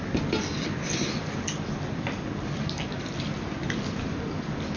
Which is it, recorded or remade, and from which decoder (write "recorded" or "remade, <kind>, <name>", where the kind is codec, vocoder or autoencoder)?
recorded